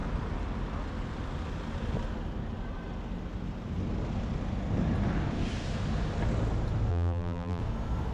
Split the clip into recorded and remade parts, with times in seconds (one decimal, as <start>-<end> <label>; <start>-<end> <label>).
0.0-6.9 recorded; 6.9-7.6 remade; 7.6-8.1 recorded